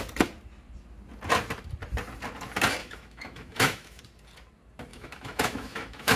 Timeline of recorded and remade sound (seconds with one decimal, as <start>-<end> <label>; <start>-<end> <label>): 0.0-2.8 recorded; 2.8-4.0 remade; 4.0-4.9 recorded; 4.9-6.2 remade